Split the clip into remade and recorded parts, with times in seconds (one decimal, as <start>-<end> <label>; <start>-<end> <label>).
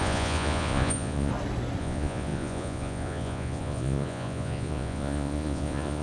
0.0-1.3 remade; 1.3-1.8 recorded; 1.8-6.0 remade